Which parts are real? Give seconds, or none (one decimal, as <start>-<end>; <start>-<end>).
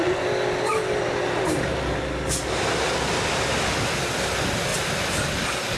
0.0-4.7; 5.2-5.8